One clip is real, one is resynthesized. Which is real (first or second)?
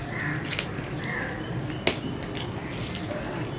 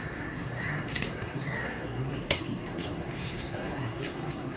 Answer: first